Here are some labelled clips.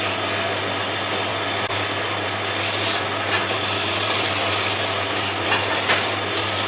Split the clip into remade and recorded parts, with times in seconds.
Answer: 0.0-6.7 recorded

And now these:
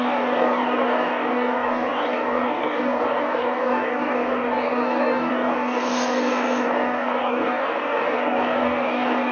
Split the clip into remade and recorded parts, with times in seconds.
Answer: 0.0-9.3 remade

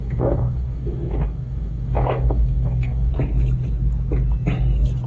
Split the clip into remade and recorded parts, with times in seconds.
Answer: 0.0-3.1 remade; 3.1-5.1 recorded

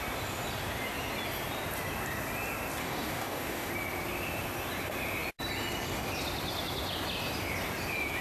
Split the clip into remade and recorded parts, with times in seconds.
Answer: 0.0-2.8 recorded; 2.8-3.7 remade; 3.7-8.2 recorded